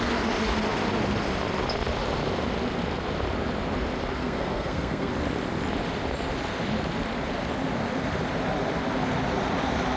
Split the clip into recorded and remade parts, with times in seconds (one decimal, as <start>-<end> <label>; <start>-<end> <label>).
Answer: 0.0-4.2 recorded; 4.2-5.1 remade; 5.1-10.0 recorded